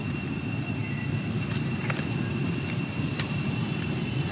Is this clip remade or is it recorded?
recorded